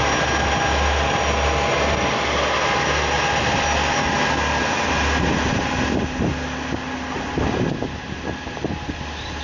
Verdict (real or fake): real